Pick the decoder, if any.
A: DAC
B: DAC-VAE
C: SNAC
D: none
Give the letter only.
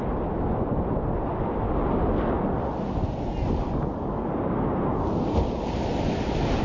D